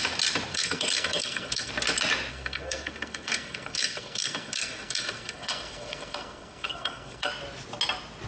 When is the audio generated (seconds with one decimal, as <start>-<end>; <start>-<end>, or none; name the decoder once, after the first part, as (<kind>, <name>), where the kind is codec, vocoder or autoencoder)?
0.5-1.7 (codec, SNAC); 2.3-7.3